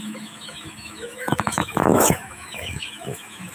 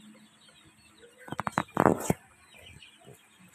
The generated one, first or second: first